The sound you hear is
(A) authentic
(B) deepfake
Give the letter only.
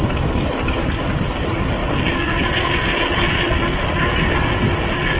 A